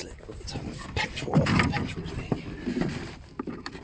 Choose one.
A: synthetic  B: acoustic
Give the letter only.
B